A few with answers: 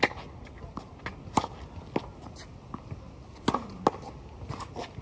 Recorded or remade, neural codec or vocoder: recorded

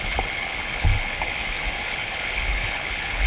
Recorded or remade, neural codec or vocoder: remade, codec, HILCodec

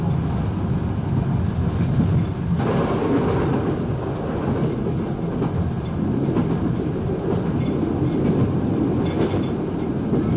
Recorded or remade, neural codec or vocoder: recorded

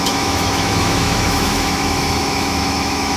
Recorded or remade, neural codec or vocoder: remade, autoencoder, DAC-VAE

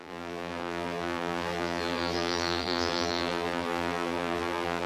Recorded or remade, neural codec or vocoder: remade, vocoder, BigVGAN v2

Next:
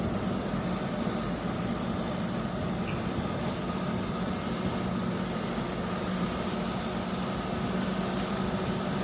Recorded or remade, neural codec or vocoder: recorded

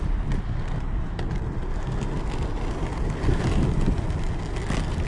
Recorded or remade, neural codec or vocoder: recorded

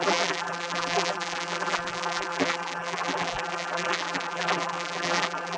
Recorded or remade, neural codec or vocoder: remade, vocoder, BigVGAN v2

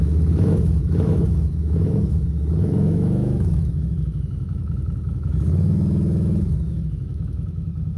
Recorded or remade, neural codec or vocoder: remade, autoencoder, DAC-VAE